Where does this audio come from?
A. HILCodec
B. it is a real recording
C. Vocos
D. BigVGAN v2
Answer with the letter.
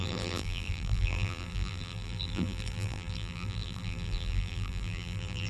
D